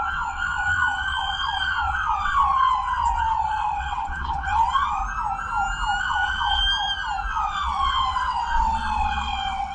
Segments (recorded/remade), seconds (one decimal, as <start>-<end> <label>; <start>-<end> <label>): 0.0-5.0 remade; 5.0-6.0 recorded; 6.0-6.6 remade; 6.6-7.3 recorded; 7.3-9.7 remade